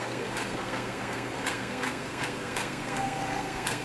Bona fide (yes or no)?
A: no